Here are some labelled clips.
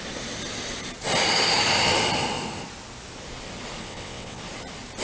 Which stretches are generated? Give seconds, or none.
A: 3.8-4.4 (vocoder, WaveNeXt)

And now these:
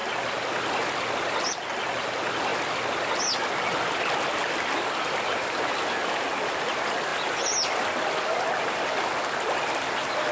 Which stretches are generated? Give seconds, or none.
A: none

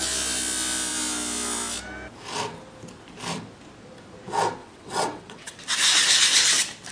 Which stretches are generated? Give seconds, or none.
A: 4.6-5.6 (vocoder, WaveNeXt)

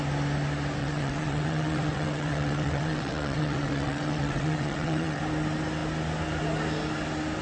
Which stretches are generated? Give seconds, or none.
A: 0.8-5.2 (vocoder, WaveNeXt)

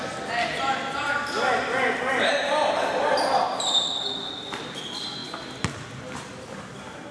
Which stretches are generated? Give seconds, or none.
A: none

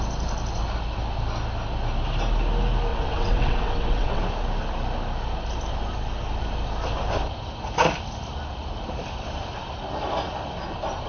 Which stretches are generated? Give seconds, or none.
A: 2.9-4.2 (vocoder, WaveNeXt)

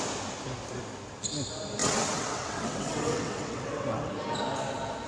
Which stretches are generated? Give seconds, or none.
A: 1.8-4.1 (vocoder, WaveNeXt)